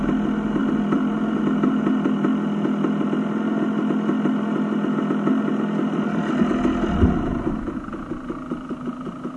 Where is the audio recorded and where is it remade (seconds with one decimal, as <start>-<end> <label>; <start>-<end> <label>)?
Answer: 0.0-0.6 recorded; 0.6-1.4 remade; 1.4-9.4 recorded